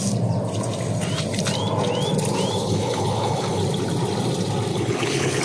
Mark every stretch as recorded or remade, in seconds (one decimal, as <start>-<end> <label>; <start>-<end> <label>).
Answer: 0.0-2.6 recorded; 2.6-3.6 remade; 3.6-4.7 recorded; 4.7-5.4 remade